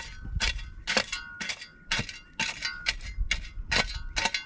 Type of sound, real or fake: real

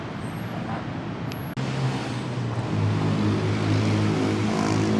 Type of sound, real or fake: real